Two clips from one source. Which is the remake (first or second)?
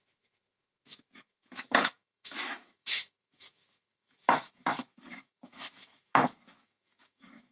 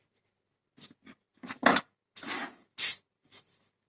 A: first